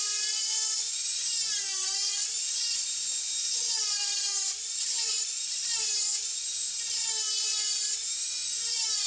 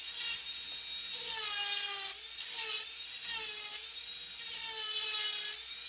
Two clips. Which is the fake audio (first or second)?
first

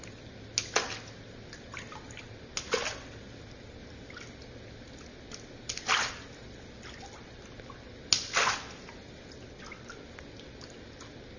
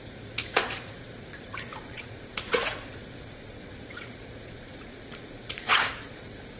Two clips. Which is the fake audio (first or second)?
second